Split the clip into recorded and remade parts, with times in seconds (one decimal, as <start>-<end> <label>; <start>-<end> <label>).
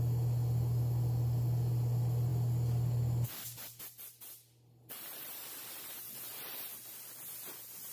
0.0-7.9 recorded